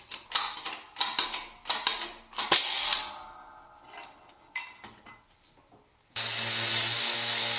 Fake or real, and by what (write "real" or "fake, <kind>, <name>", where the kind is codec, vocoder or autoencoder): real